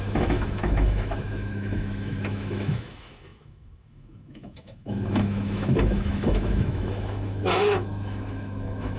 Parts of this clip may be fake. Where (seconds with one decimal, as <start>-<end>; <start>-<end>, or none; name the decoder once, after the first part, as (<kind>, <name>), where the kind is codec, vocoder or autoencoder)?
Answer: 0.0-9.0 (autoencoder, DAC-VAE)